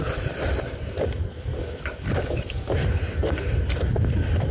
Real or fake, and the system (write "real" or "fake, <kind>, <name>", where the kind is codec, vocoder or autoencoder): fake, vocoder, BigVGAN v2